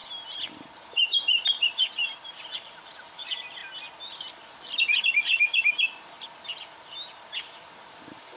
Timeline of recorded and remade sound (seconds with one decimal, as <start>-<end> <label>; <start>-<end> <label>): 0.0-3.6 remade; 3.6-4.5 recorded; 4.5-8.4 remade